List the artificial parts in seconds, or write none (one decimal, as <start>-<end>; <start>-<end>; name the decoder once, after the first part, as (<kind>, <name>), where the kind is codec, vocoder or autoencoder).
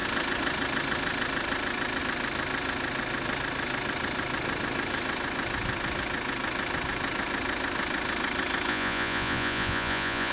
8.7-10.3 (vocoder, Vocos)